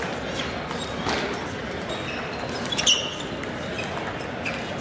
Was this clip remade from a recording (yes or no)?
no